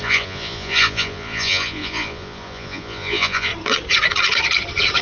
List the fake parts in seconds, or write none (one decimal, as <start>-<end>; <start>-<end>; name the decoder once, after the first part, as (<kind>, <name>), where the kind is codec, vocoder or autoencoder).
0.0-3.5 (vocoder, Vocos)